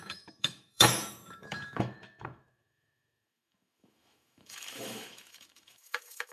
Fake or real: fake